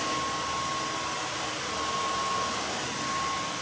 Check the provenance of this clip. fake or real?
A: real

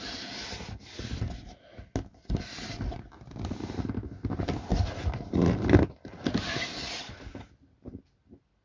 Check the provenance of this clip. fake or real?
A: real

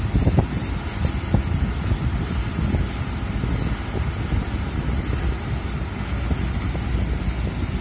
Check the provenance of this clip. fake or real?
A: real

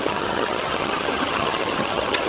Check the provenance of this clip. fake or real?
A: fake